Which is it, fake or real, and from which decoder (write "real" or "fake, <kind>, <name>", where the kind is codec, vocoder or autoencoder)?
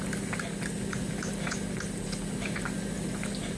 real